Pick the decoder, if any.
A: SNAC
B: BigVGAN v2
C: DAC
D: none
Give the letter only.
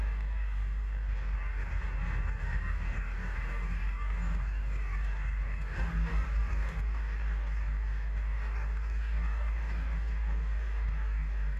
C